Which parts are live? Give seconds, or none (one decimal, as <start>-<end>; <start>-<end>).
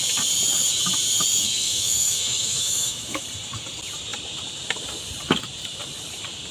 0.0-1.4; 3.2-6.5